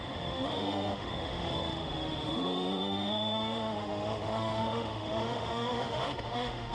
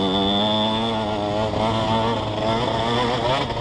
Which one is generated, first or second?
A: first